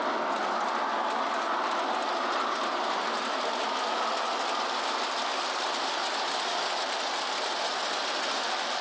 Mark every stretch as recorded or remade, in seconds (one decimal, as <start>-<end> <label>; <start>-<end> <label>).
0.0-8.8 recorded